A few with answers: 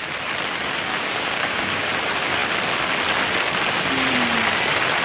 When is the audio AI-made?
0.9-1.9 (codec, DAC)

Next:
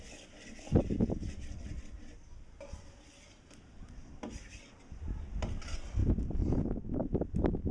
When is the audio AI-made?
none

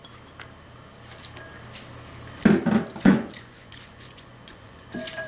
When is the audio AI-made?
3.0-5.3 (vocoder, Vocos)